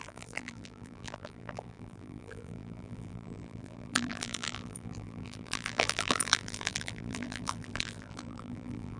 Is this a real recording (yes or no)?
no